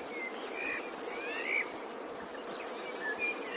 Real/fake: real